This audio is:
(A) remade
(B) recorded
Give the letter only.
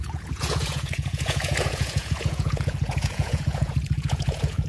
A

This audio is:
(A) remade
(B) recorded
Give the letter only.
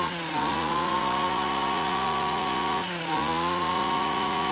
A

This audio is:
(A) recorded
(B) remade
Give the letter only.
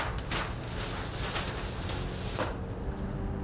A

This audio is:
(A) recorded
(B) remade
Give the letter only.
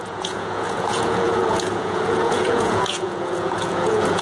B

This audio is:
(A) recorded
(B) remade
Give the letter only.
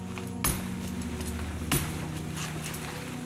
A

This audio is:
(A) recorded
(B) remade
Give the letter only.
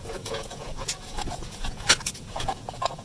B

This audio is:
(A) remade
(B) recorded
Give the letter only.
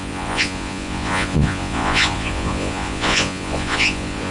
A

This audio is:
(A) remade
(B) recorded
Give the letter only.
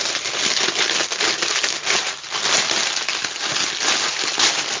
B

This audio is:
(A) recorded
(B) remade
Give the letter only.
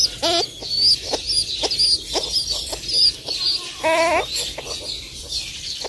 A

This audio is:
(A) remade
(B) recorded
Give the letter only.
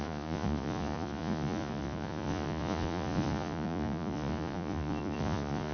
A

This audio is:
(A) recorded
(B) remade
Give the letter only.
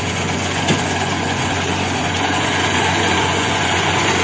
B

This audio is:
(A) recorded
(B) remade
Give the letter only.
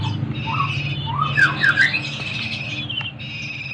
A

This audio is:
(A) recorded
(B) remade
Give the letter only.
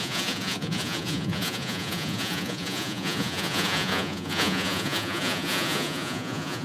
B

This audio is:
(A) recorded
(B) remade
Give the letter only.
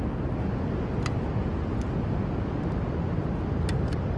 A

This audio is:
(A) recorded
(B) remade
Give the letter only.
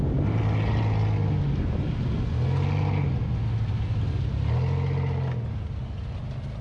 A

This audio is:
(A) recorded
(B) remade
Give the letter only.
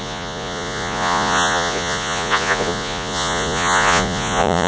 B